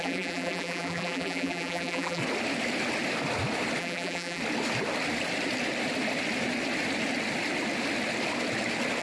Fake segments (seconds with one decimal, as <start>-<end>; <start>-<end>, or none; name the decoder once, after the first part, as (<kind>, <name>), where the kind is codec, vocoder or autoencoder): 0.0-2.2 (vocoder, BigVGAN v2); 3.8-4.4